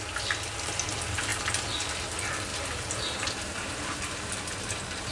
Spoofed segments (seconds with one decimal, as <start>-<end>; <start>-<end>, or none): 2.5-4.3